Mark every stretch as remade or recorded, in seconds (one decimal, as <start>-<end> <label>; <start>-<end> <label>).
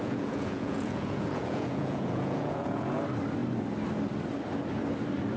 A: 0.0-3.0 remade; 3.0-5.4 recorded